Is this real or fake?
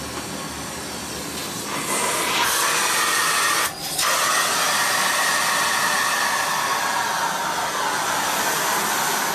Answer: real